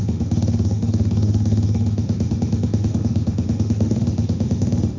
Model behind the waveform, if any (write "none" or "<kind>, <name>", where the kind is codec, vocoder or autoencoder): autoencoder, DAC-VAE